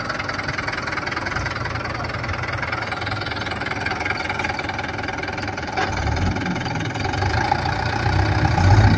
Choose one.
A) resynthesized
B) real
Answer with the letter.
B